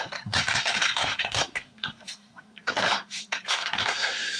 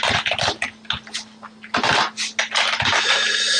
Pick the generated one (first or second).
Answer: first